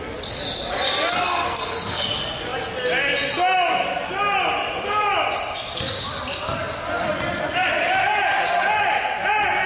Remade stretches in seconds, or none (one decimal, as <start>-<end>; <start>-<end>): 1.2-2.1